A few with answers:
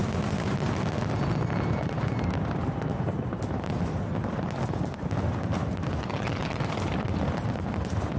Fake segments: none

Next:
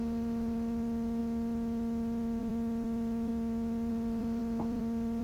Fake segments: 0.0-1.2 (vocoder, BigVGAN v2); 2.4-3.3; 3.9-5.2